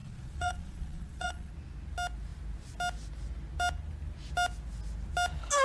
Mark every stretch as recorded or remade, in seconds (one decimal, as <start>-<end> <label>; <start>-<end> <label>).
0.0-1.5 remade; 1.5-5.6 recorded